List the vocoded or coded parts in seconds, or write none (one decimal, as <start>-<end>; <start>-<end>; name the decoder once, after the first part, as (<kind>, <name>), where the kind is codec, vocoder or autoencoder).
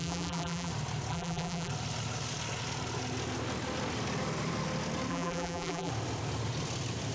0.0-0.7 (vocoder, BigVGAN v2); 1.1-1.7; 5.1-5.9